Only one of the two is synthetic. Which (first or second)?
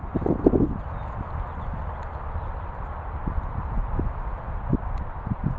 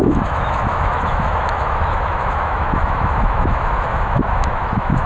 second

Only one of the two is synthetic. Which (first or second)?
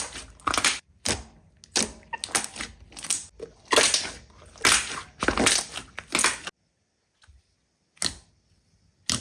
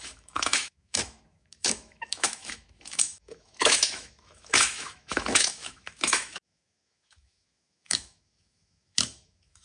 second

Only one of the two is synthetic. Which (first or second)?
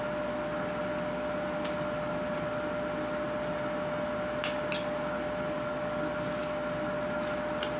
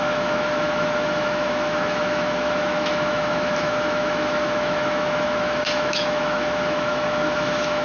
second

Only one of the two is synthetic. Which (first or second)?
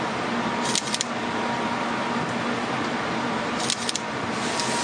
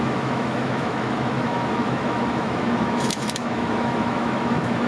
second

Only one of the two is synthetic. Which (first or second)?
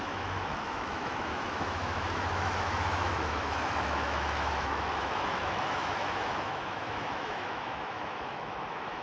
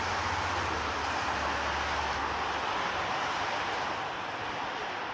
first